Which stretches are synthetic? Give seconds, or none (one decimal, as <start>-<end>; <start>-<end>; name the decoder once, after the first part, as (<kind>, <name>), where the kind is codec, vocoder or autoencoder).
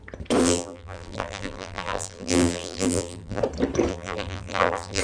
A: 0.4-3.4 (vocoder, BigVGAN v2); 3.9-5.0